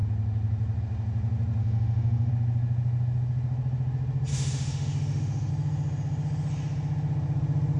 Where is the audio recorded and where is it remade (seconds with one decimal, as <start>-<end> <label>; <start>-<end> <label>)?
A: 0.0-1.6 recorded; 1.6-2.3 remade; 2.3-4.3 recorded; 4.3-5.5 remade; 5.5-7.8 recorded